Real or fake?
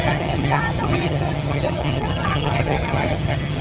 fake